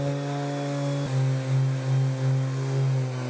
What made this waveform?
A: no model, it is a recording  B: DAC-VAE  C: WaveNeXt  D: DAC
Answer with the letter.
A